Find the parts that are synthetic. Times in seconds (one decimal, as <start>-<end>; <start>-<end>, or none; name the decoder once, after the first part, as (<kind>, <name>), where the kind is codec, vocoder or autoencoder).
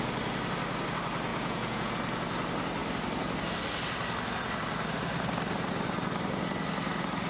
1.3-1.9 (vocoder, Vocos)